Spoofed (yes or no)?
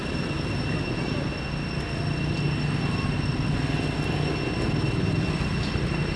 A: no